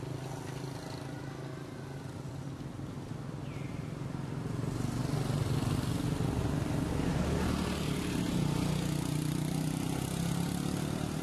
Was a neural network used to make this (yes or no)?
no